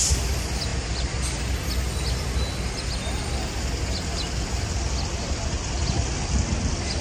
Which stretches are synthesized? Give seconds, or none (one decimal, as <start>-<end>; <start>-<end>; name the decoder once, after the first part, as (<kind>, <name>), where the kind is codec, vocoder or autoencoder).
none